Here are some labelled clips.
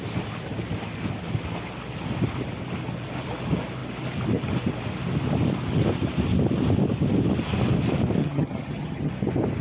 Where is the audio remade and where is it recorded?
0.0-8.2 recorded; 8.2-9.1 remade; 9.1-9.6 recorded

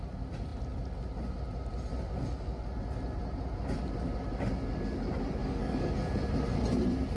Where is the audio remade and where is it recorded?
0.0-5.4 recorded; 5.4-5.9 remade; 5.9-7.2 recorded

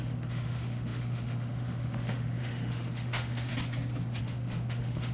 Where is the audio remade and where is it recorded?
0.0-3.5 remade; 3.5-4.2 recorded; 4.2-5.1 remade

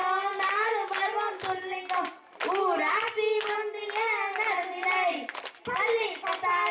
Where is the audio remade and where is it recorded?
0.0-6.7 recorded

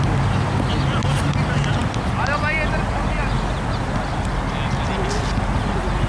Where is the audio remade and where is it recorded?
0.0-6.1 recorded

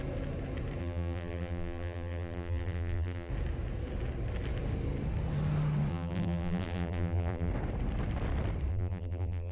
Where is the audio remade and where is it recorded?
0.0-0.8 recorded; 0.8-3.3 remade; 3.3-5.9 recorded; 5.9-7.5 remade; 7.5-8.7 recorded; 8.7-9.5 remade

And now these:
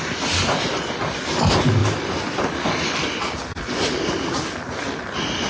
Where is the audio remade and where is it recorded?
0.0-5.5 recorded